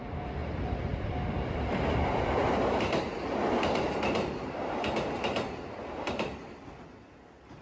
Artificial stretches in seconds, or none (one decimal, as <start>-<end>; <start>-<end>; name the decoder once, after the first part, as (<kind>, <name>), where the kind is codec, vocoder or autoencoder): 0.4-4.7 (vocoder, BigVGAN v2)